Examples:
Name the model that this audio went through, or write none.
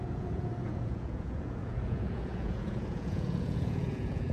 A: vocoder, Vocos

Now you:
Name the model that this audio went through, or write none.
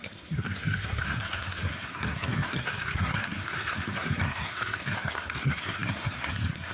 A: codec, SNAC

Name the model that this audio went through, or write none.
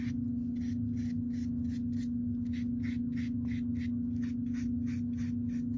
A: none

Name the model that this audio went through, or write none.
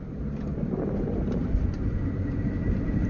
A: vocoder, BigVGAN v2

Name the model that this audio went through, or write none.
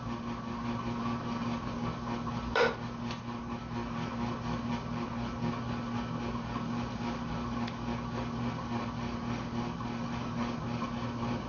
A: none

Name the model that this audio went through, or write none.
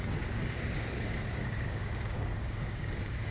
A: codec, DAC